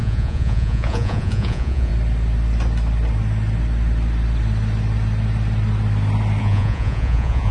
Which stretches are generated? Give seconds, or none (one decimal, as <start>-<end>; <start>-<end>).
0.0-1.9; 6.4-7.5